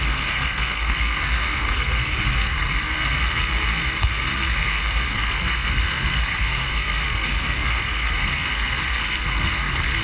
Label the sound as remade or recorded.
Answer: remade